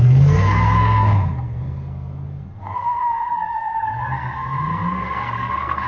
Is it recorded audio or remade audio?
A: remade